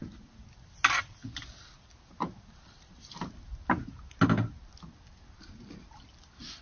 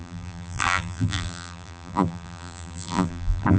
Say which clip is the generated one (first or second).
second